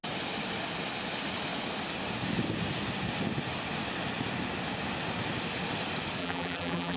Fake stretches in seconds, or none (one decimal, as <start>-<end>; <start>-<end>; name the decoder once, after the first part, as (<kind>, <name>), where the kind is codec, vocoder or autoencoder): 6.2-7.0 (vocoder, BigVGAN v2)